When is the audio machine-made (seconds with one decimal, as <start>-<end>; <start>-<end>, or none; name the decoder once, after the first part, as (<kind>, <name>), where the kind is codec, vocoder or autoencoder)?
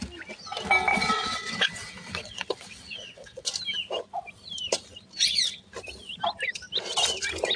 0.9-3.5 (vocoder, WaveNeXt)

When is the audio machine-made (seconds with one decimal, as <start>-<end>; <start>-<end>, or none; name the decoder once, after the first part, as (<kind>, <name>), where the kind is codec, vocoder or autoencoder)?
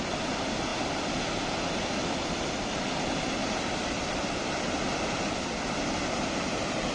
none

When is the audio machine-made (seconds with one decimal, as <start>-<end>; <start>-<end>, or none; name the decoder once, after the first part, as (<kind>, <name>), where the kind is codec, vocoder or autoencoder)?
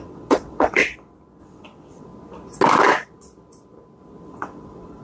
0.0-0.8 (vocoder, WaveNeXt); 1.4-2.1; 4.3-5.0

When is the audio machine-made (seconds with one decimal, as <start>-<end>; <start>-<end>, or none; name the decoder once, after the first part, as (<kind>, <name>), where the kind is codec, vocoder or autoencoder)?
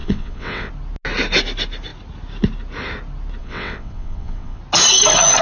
0.0-0.7 (vocoder, WaveNeXt); 3.4-4.6